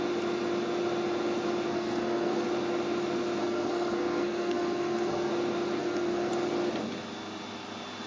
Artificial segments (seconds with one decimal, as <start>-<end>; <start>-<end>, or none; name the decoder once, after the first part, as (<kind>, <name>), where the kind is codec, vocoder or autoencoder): 1.7-2.4 (codec, SNAC); 3.4-5.3; 5.8-6.3